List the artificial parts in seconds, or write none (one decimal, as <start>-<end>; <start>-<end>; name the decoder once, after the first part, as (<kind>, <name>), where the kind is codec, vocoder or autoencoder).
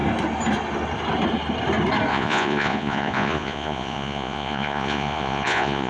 2.1-5.9 (vocoder, Vocos)